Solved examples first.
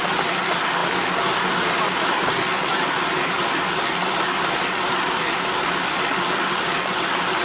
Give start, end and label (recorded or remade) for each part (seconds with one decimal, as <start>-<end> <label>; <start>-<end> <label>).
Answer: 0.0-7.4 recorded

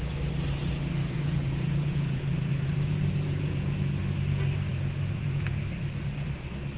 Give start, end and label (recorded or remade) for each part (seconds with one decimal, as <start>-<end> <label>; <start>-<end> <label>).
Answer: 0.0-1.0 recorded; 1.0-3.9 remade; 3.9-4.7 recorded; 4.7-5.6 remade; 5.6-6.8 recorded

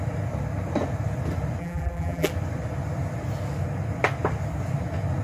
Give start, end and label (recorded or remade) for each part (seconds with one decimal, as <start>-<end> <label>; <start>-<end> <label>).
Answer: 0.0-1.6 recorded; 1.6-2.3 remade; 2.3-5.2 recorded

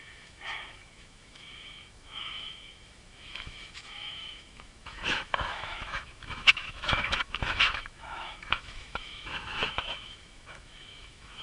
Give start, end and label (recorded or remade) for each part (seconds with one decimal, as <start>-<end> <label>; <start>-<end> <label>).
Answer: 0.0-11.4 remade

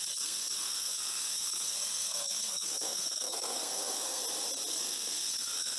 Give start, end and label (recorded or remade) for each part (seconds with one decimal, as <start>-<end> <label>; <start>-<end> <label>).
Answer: 0.0-4.2 remade; 4.2-4.7 recorded; 4.7-5.8 remade

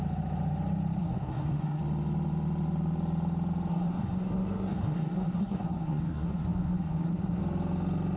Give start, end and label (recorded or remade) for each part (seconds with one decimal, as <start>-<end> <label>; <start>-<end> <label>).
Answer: 0.0-1.0 recorded; 1.0-1.8 remade; 1.8-3.7 recorded; 3.7-7.4 remade; 7.4-8.2 recorded